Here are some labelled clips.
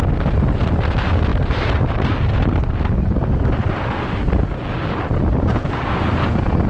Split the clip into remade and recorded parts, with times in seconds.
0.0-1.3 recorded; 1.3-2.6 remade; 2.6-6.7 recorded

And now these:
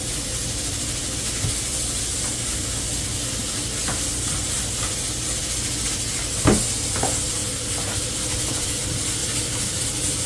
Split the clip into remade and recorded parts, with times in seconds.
0.0-1.0 recorded; 1.0-2.6 remade; 2.6-7.4 recorded; 7.4-8.1 remade; 8.1-9.2 recorded; 9.2-9.8 remade; 9.8-10.3 recorded